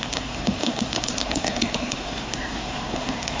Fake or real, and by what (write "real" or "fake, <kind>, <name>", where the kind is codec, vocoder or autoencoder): fake, codec, SNAC